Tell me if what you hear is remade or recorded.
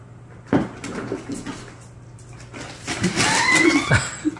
recorded